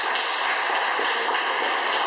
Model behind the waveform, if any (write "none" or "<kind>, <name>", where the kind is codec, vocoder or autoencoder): none